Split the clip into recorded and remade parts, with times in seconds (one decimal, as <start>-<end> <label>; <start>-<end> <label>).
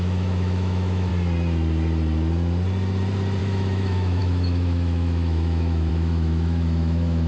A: 0.0-1.1 remade; 1.1-3.4 recorded; 3.4-7.3 remade